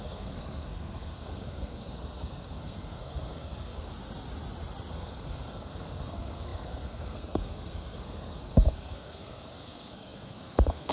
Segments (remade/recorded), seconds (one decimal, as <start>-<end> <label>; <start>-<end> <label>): 0.0-3.9 remade; 3.9-4.9 recorded; 4.9-10.9 remade